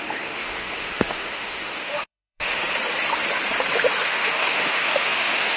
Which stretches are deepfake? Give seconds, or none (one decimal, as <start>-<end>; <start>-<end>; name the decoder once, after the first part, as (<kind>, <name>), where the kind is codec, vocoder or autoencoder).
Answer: 0.0-2.6 (autoencoder, DAC-VAE); 4.0-5.6